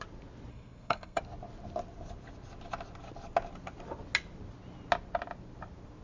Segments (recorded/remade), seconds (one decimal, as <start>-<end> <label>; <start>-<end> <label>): 0.0-0.5 recorded; 0.5-1.2 remade; 1.2-6.0 recorded